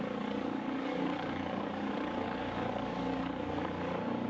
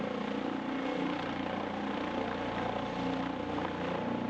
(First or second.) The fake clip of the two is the first